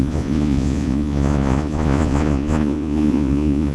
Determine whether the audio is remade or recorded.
remade